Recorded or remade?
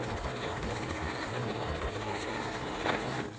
remade